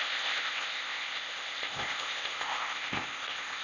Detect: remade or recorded remade